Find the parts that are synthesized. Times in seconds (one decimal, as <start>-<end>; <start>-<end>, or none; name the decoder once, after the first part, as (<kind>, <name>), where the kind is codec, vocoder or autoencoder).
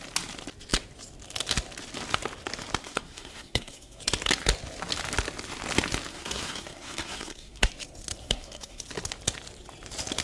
2.8-4.0 (codec, SNAC); 6.1-7.7; 8.2-8.8